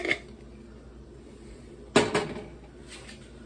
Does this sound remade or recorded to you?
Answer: recorded